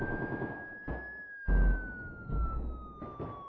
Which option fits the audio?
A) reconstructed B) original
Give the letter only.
B